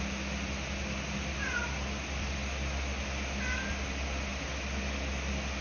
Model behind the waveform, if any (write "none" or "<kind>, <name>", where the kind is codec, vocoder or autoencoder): none